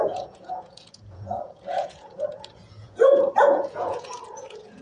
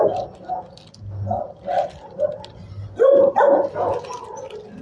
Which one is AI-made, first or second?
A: first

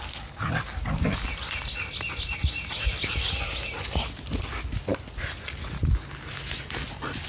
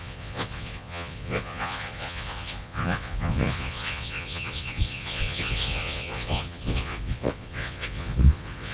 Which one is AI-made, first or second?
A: second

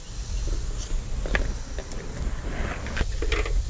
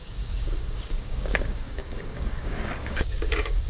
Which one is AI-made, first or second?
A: second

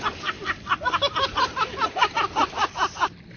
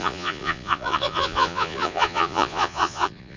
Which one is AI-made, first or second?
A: second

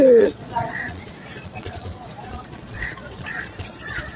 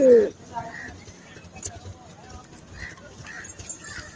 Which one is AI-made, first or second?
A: first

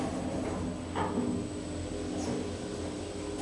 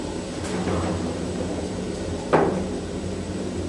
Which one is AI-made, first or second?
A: second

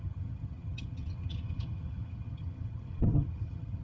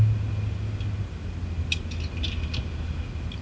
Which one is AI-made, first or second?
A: first